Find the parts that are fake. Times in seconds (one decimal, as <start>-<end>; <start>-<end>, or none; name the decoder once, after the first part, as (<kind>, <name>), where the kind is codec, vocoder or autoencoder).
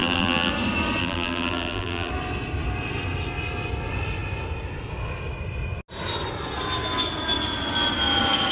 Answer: 0.0-0.5 (vocoder, BigVGAN v2); 1.0-2.1